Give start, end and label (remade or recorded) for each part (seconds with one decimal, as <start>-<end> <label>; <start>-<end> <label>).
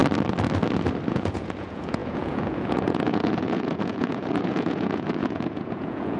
0.0-1.1 recorded; 1.1-6.2 remade